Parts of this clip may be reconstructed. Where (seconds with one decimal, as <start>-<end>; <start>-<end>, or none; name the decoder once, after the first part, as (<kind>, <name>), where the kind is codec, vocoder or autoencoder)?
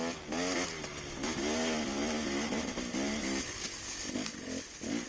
none